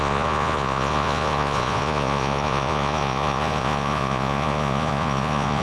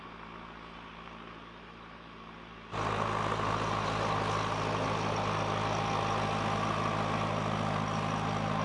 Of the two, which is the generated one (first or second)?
first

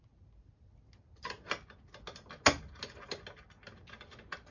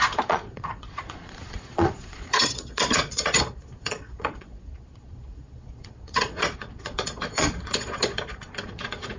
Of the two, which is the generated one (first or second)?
second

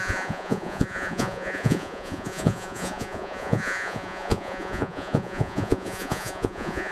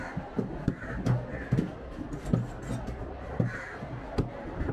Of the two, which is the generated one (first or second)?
first